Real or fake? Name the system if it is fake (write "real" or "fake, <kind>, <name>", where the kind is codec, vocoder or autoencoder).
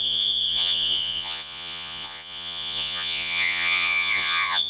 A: fake, vocoder, Vocos